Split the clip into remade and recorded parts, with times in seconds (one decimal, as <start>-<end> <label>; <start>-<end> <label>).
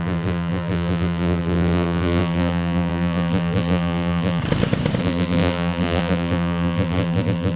0.0-4.4 remade; 4.4-5.0 recorded; 5.0-7.6 remade